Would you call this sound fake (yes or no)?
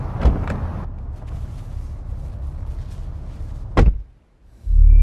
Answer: no